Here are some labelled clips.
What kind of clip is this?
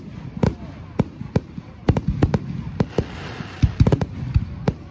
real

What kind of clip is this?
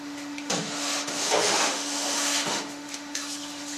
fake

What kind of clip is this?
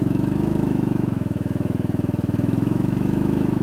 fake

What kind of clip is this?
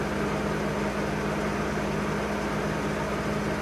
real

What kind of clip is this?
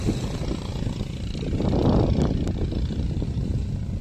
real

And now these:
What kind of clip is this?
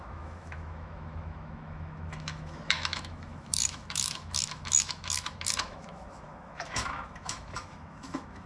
fake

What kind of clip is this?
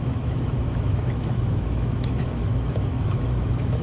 fake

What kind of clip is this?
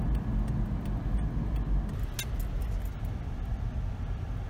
real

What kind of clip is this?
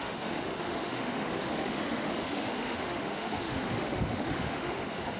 fake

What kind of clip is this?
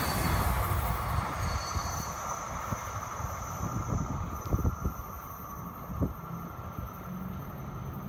real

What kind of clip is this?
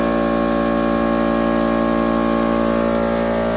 real